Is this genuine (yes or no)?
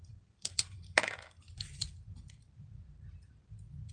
no